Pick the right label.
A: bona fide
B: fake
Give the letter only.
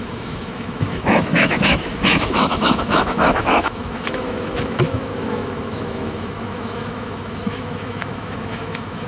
B